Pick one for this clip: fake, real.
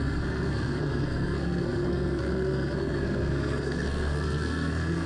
fake